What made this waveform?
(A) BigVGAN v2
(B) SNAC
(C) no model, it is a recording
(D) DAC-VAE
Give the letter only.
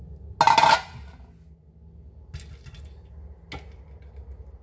C